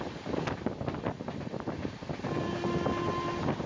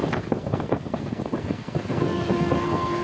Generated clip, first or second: second